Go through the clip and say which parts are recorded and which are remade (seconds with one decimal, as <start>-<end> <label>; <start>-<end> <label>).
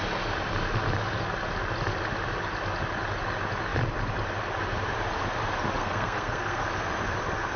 0.0-5.8 recorded; 5.8-6.6 remade; 6.6-7.6 recorded